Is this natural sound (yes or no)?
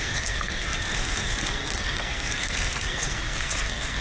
no